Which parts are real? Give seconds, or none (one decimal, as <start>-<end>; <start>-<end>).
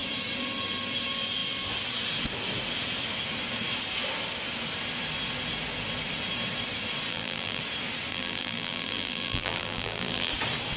0.0-7.1; 7.6-8.1; 10.3-10.8